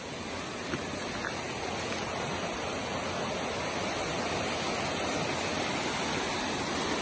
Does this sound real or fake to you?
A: real